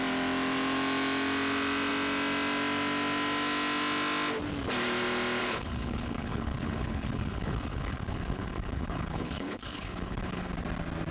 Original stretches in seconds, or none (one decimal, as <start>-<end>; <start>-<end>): 0.0-5.4; 10.5-11.1